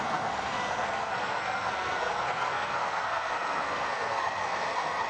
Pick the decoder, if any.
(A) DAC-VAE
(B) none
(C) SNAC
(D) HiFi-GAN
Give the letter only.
C